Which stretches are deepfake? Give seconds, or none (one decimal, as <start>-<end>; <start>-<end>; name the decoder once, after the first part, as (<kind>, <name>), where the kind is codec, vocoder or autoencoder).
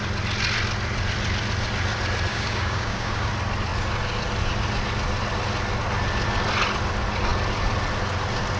2.3-3.3 (codec, DAC)